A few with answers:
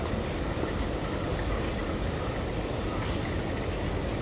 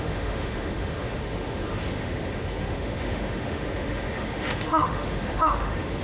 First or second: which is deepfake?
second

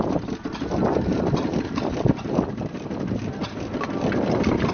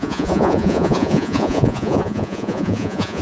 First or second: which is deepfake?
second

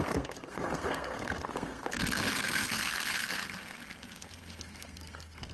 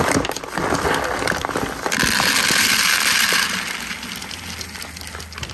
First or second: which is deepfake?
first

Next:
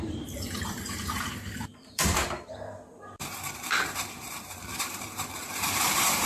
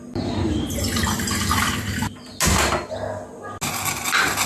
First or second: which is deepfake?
first